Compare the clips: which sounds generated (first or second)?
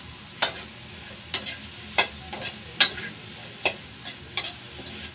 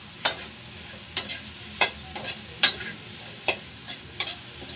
second